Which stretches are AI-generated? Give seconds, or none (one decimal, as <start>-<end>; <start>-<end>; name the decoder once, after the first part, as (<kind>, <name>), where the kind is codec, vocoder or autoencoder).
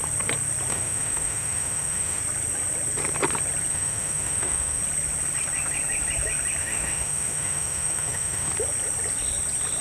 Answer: 0.7-2.2 (autoencoder, DAC-VAE); 3.7-4.8; 6.6-8.5